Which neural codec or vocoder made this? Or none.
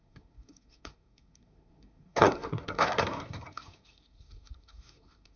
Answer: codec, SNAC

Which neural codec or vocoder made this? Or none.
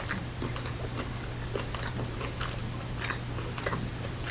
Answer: none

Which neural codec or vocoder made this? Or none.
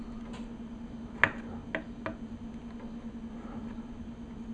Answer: none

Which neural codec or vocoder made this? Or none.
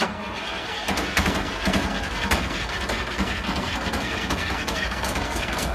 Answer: codec, SNAC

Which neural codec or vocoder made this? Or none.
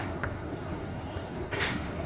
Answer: codec, SNAC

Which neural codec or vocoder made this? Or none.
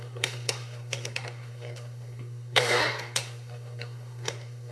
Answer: codec, SNAC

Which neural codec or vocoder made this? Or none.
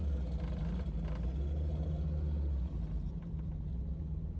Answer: none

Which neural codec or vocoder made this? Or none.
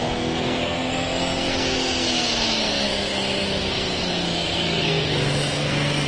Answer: codec, SNAC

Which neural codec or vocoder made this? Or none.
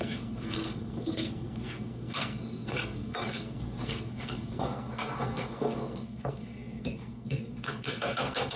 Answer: codec, SNAC